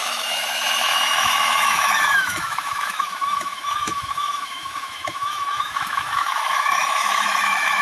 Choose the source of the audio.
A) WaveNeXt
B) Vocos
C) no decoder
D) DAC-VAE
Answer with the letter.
D